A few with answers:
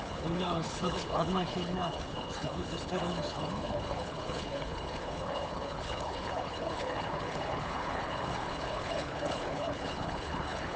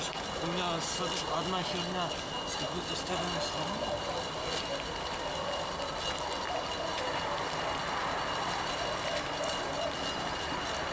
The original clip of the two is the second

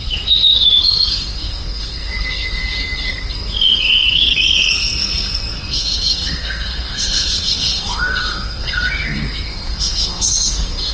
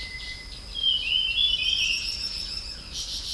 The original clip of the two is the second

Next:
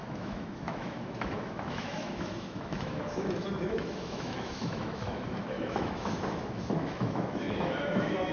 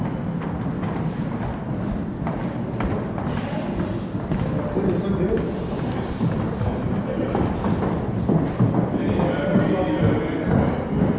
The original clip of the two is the second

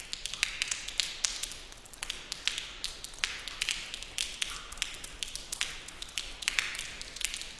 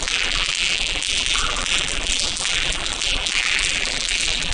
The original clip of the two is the first